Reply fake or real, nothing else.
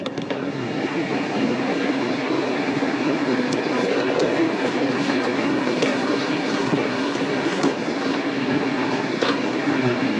fake